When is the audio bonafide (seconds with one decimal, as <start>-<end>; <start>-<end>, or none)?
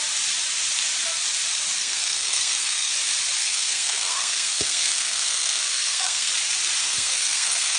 0.0-1.8; 2.9-3.4; 6.3-6.8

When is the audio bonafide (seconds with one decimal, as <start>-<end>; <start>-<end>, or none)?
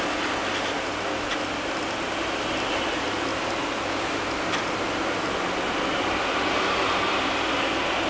0.0-8.1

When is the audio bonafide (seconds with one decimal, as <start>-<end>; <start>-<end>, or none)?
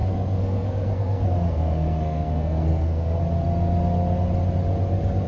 3.2-5.3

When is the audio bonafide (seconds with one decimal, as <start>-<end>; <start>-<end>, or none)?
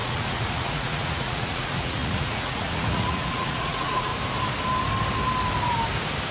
4.1-6.3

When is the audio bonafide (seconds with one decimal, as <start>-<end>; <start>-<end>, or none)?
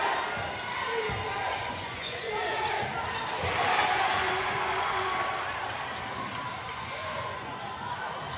0.0-1.4; 2.3-3.8; 5.1-6.7; 7.6-8.4